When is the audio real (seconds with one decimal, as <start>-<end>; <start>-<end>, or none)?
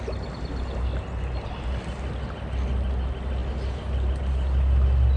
0.0-5.2